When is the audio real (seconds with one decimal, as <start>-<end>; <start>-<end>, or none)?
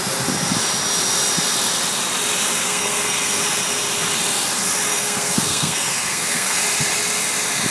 0.0-2.6; 3.4-4.9; 6.6-7.7